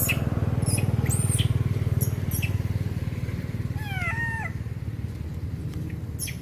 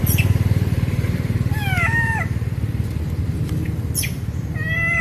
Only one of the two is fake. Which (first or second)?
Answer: second